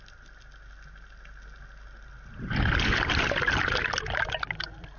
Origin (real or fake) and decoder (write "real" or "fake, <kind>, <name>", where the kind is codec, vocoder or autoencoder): real